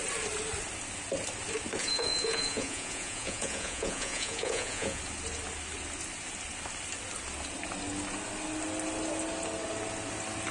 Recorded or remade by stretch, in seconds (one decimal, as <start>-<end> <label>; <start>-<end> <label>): 0.0-1.8 recorded; 1.8-5.0 remade; 5.0-10.5 recorded

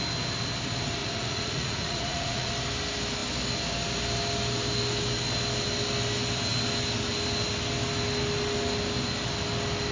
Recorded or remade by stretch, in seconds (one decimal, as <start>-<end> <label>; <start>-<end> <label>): 0.0-1.0 recorded; 1.0-2.5 remade; 2.5-9.9 recorded